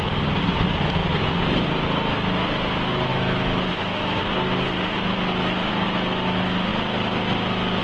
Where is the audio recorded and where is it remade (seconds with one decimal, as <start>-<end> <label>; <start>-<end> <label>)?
0.0-3.1 recorded; 3.1-4.2 remade; 4.2-7.8 recorded